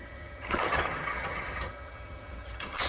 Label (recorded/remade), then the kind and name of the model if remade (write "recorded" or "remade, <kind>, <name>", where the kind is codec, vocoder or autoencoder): remade, vocoder, HiFi-GAN